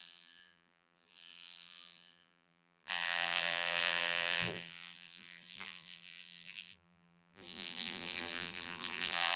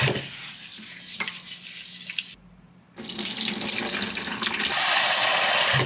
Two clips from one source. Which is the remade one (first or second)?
first